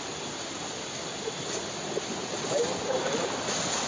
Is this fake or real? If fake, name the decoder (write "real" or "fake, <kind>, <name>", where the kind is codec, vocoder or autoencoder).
real